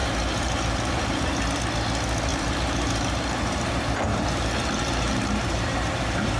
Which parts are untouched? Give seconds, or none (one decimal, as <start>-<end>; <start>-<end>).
1.6-2.3